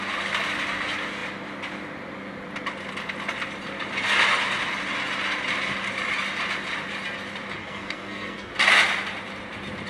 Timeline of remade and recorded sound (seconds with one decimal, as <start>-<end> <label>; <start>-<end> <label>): 0.0-7.6 recorded; 7.6-8.5 remade; 8.5-9.9 recorded